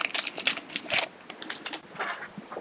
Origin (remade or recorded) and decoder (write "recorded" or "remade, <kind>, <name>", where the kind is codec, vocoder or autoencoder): recorded